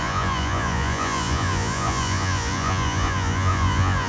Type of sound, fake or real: fake